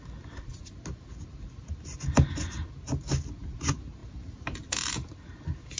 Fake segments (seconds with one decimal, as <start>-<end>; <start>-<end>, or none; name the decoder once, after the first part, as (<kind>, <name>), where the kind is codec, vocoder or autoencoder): none